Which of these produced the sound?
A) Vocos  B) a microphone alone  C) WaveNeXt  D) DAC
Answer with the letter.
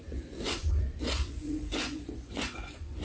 A